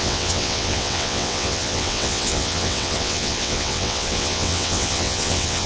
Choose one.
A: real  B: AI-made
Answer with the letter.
B